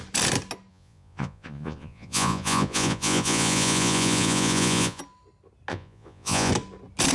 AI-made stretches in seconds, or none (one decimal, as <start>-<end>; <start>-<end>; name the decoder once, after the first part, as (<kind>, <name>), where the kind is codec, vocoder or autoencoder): 0.7-5.0 (vocoder, Vocos); 5.7-6.5

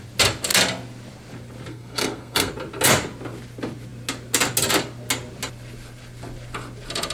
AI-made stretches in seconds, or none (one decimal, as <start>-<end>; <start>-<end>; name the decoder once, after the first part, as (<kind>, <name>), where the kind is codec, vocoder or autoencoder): 1.7-2.5 (codec, SNAC)

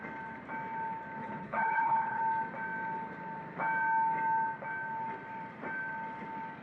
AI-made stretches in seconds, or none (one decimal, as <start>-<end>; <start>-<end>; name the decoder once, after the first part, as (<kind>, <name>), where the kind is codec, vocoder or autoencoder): 1.2-2.2 (codec, HILCodec)

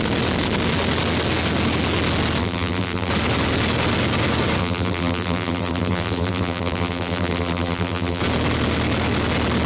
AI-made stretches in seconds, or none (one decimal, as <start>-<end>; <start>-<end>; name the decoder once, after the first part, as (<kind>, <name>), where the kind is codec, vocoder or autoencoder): 2.4-3.1 (vocoder, BigVGAN v2); 4.6-8.2

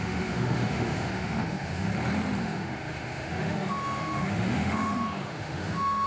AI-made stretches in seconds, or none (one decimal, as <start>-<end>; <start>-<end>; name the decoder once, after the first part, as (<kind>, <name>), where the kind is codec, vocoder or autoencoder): 0.0-1.9 (autoencoder, DAC-VAE); 2.4-6.1

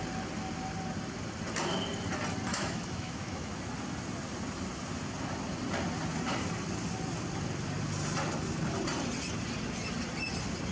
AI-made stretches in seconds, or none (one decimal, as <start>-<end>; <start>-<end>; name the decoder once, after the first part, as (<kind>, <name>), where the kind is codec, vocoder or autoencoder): 2.5-3.6 (autoencoder, DAC-VAE)

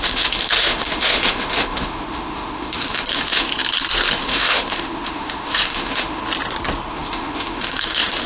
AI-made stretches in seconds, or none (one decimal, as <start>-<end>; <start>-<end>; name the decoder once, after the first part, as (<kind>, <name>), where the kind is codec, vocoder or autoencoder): 0.0-3.5 (autoencoder, DAC-VAE); 4.2-6.2; 6.9-8.3

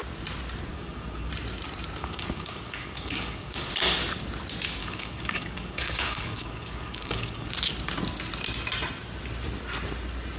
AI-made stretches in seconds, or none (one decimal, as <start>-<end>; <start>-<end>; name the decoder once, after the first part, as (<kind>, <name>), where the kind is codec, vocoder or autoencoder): 0.7-1.3 (codec, DAC); 2.0-3.7; 4.8-7.5